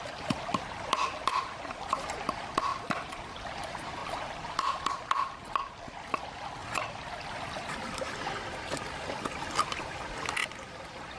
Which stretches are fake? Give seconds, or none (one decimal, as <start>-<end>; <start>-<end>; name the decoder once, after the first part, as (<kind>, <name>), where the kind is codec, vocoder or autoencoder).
2.7-3.2 (vocoder, BigVGAN v2); 4.0-4.9; 6.6-8.5; 10.4-11.2